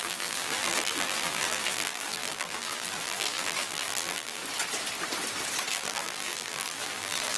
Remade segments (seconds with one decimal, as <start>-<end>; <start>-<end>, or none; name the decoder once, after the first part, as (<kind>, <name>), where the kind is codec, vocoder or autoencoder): 0.0-4.4 (vocoder, BigVGAN v2); 5.7-7.4